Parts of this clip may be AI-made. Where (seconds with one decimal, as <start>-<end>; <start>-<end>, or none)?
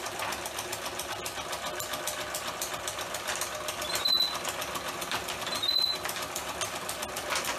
none